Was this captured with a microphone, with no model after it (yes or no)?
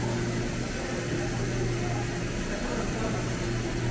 yes